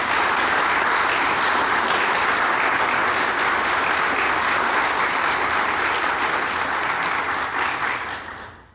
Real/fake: real